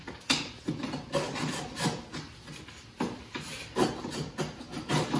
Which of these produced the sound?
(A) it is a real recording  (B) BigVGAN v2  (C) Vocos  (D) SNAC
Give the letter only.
A